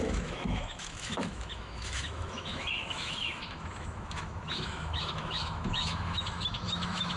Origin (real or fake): fake